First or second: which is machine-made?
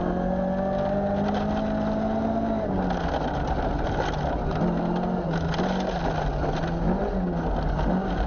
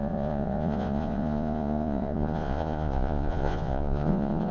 second